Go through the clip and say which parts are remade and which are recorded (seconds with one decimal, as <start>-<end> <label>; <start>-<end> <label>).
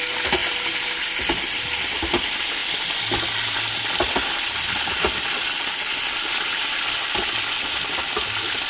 0.0-8.7 recorded